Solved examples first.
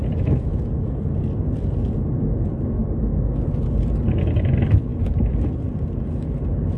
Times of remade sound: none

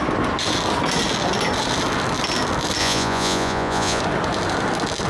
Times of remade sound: 2.8-4.0 (vocoder, Vocos)

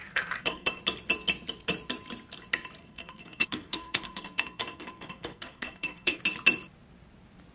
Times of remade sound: 0.0-0.8 (codec, SNAC); 2.8-6.2

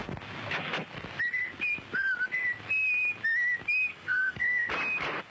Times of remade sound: 3.9-4.7 (codec, SNAC)